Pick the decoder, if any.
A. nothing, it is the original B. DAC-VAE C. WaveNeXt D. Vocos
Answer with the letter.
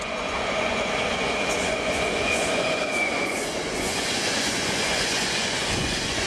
D